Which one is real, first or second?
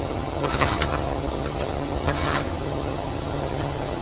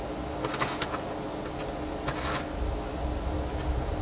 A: second